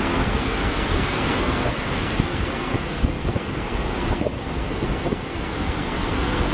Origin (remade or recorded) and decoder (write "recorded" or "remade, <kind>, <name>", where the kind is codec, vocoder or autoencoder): remade, codec, SNAC